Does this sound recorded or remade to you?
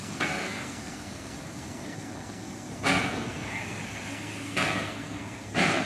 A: remade